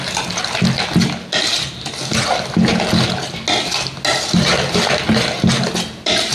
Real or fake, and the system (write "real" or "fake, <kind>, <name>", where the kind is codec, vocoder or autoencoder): real